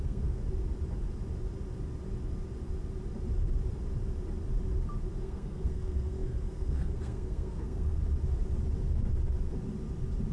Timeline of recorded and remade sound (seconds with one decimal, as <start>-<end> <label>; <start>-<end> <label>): 0.0-0.4 remade; 0.4-5.2 recorded; 5.2-8.0 remade; 8.0-10.3 recorded